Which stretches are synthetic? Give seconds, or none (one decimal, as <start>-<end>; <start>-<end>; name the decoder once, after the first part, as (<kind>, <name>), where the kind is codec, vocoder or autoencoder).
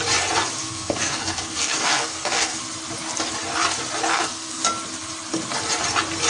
0.6-2.6 (codec, SNAC); 4.1-4.6